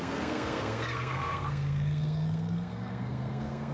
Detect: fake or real fake